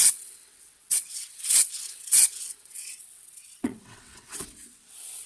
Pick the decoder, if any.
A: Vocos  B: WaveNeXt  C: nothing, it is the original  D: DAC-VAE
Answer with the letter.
B